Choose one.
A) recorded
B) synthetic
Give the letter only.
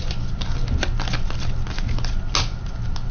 A